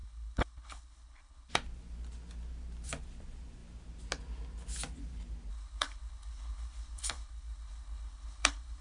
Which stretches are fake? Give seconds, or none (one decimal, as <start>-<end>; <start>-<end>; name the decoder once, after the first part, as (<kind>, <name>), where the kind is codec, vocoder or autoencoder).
0.0-1.5 (codec, HILCodec); 5.5-8.8